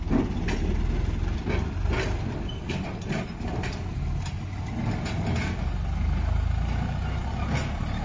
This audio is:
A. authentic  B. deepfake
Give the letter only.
A